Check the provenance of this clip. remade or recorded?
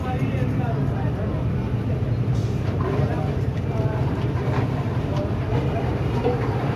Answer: remade